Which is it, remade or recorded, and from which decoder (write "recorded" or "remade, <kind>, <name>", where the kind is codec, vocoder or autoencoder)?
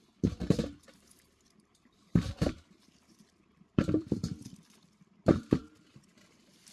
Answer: remade, vocoder, BigVGAN v2